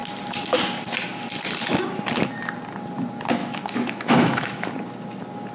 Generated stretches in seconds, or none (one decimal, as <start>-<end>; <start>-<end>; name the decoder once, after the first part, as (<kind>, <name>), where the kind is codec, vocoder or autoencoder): 3.4-4.7 (autoencoder, DAC-VAE)